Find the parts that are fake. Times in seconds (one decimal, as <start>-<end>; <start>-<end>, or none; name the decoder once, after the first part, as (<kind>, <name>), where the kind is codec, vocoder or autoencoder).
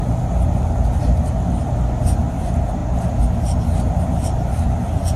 none